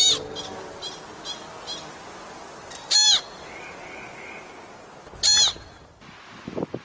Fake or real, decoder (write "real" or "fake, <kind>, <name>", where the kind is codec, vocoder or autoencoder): real